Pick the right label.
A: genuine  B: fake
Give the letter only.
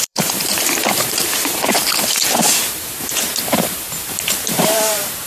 B